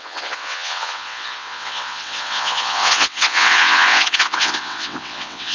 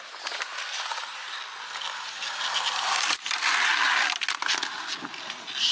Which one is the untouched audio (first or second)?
second